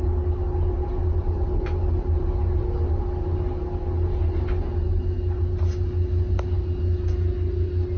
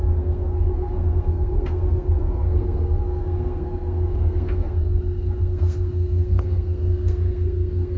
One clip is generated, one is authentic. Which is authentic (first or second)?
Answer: first